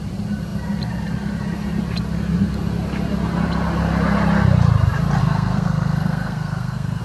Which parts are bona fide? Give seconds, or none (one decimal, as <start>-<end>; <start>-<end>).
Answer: 0.0-5.2